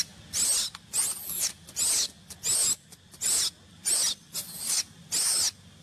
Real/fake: real